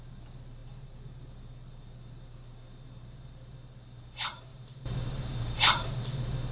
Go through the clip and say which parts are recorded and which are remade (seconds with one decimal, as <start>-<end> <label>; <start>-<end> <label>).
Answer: 0.0-4.5 recorded; 4.5-5.9 remade; 5.9-6.5 recorded

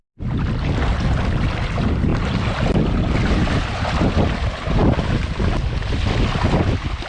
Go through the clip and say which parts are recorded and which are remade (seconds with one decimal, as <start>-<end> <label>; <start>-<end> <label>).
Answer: 0.0-7.1 recorded

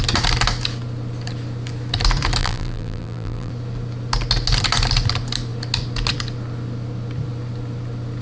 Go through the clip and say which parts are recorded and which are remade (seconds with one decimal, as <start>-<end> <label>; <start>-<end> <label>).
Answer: 0.0-2.4 recorded; 2.4-3.5 remade; 3.5-8.2 recorded